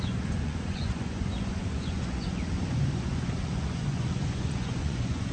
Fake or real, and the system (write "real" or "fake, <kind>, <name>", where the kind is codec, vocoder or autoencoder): fake, vocoder, Vocos